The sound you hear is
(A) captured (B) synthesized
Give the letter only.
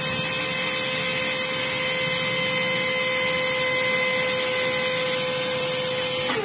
A